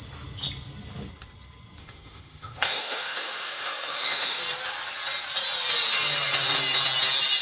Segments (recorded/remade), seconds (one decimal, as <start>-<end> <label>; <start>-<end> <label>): 0.0-1.8 recorded; 1.8-4.4 remade; 4.4-7.4 recorded